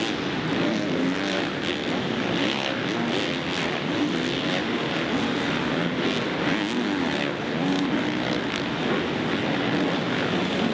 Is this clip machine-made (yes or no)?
no